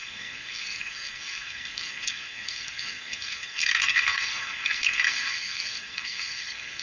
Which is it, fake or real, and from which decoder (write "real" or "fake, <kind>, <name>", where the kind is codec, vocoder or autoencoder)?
fake, codec, SNAC